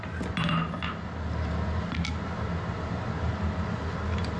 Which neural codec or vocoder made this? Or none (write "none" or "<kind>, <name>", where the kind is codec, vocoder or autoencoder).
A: none